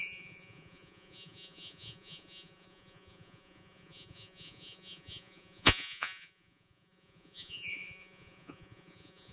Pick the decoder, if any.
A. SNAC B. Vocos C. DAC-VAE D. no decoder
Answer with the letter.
B